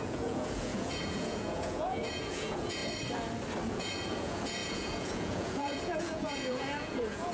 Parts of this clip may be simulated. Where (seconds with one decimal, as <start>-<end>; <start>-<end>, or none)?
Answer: 0.0-2.8; 3.7-7.3